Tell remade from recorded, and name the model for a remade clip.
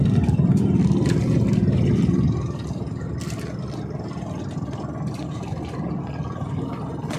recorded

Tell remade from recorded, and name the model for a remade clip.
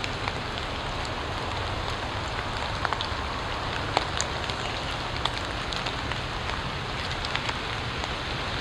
recorded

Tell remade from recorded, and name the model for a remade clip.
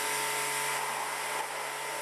recorded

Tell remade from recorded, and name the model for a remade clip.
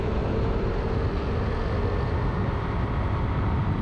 recorded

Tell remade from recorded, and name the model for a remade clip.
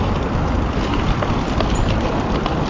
remade, vocoder, BigVGAN v2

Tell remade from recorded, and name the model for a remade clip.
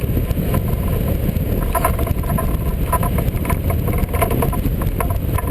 recorded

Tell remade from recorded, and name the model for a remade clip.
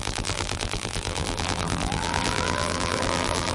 remade, vocoder, BigVGAN v2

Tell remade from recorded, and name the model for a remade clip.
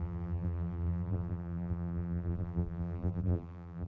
remade, vocoder, BigVGAN v2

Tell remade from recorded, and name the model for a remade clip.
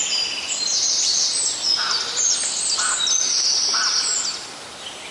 recorded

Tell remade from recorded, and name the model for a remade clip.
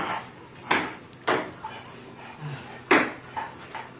recorded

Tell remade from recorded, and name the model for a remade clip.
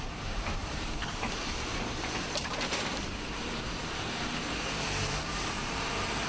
remade, vocoder, BigVGAN v2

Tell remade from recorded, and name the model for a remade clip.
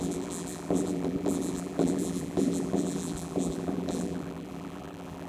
remade, vocoder, BigVGAN v2